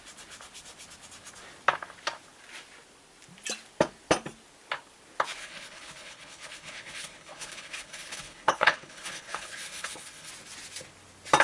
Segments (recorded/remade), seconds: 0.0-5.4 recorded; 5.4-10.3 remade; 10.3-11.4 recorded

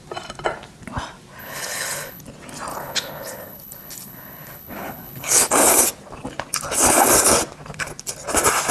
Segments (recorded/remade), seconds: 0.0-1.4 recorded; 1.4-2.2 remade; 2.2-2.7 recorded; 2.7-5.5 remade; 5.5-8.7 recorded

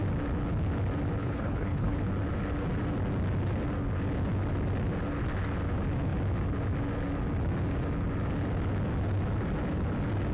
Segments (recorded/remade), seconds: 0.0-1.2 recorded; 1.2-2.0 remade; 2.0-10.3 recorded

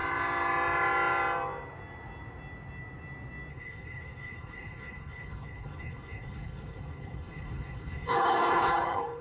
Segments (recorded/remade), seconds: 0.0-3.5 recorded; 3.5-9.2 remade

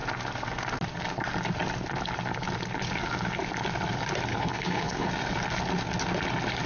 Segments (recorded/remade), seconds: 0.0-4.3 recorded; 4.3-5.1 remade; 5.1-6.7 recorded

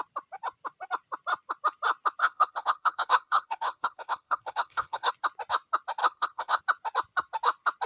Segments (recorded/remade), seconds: 0.0-2.2 recorded; 2.2-5.1 remade; 5.1-6.0 recorded; 6.0-6.6 remade; 6.6-7.9 recorded

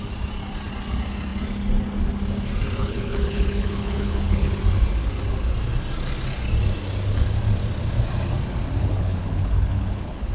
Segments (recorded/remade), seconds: 0.0-2.8 recorded; 2.8-4.6 remade; 4.6-8.8 recorded; 8.8-10.3 remade